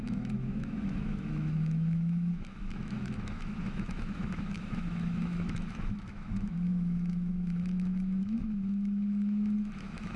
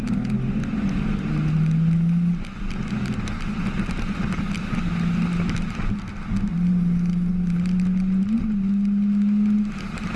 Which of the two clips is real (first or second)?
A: second